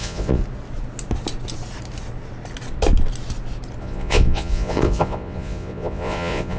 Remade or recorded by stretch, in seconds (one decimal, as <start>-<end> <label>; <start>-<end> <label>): 0.0-0.4 remade; 0.4-3.8 recorded; 3.8-6.6 remade